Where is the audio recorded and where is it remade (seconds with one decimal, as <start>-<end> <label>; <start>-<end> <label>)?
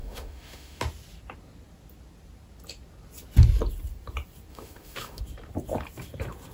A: 0.0-0.8 remade; 0.8-4.5 recorded; 4.5-5.2 remade; 5.2-6.5 recorded